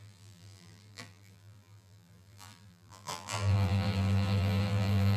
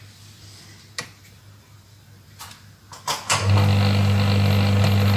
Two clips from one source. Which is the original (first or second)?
second